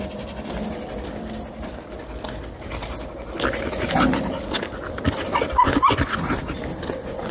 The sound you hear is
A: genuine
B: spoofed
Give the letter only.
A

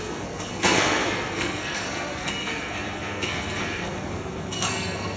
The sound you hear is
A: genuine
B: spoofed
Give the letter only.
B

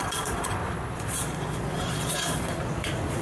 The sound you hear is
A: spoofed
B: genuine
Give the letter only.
A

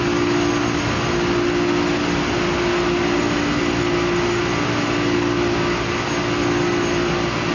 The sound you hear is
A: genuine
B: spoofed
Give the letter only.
A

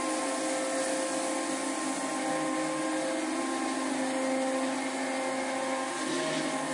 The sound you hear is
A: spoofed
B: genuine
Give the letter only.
B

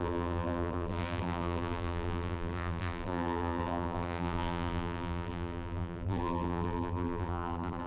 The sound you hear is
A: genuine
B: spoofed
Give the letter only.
B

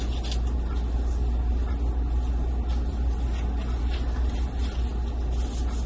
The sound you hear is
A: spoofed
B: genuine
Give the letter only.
B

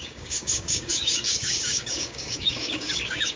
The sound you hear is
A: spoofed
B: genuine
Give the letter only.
A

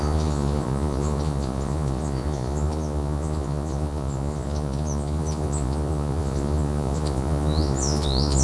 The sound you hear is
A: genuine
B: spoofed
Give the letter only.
B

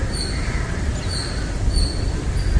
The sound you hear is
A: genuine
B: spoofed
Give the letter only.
A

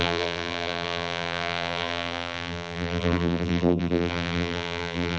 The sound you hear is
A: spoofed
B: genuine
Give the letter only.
A